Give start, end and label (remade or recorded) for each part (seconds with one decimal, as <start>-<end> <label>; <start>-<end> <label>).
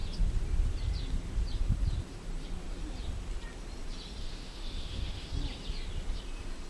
0.0-4.2 recorded; 4.2-5.3 remade; 5.3-6.7 recorded